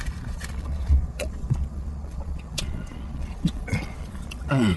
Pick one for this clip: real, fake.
fake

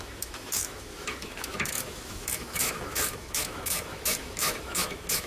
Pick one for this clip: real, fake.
fake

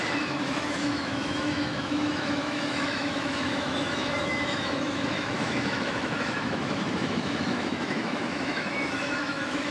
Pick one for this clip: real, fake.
fake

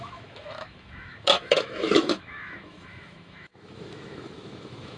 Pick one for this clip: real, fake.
fake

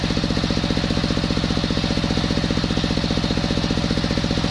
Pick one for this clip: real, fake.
real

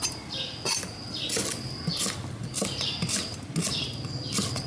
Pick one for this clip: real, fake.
real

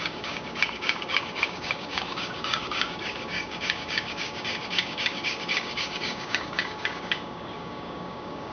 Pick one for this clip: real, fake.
fake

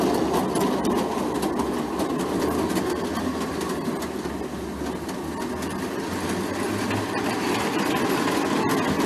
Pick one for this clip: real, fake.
real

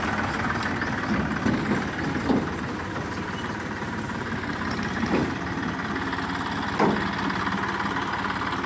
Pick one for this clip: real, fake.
real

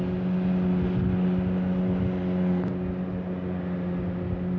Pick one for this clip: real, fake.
real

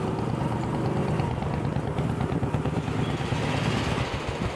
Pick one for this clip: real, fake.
real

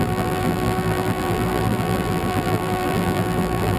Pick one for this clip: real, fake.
fake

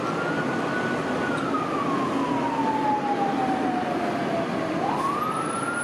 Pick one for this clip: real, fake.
real